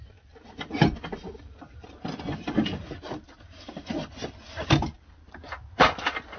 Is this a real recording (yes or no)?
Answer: yes